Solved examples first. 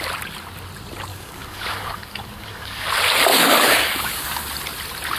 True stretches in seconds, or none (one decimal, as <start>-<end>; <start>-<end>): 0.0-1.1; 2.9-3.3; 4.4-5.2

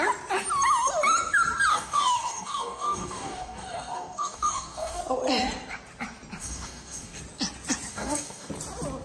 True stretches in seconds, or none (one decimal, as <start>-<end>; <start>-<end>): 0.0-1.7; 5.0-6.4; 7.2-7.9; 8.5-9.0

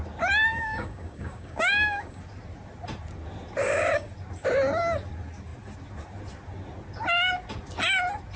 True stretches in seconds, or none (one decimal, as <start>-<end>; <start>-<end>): 0.0-0.5; 2.2-3.6; 4.1-8.4

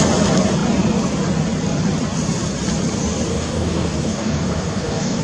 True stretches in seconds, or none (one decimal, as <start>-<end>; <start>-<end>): 0.0-3.3